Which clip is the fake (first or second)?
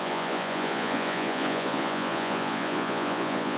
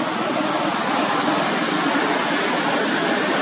first